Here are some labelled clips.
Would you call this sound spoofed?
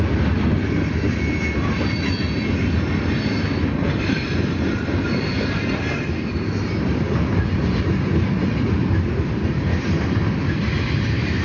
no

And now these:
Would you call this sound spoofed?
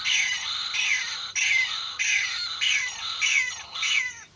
no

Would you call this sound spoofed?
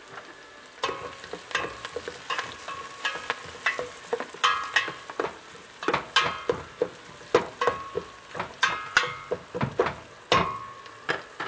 no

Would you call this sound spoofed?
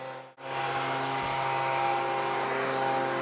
no